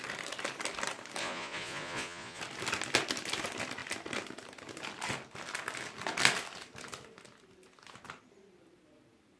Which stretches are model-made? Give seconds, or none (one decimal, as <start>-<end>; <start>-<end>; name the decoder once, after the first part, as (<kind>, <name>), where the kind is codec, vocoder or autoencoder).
1.2-2.4 (vocoder, Vocos)